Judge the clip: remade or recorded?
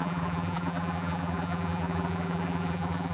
remade